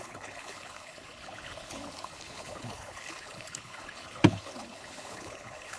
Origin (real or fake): fake